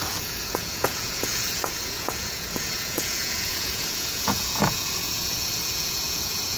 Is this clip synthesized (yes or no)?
yes